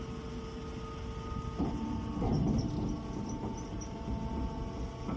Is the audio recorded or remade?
recorded